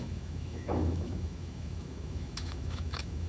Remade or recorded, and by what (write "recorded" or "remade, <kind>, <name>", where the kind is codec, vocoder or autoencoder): remade, autoencoder, DAC-VAE